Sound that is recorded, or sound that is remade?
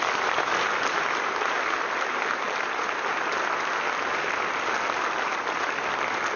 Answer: recorded